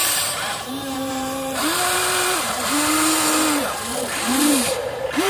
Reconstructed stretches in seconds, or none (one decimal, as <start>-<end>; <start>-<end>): 0.0-3.2; 3.6-5.3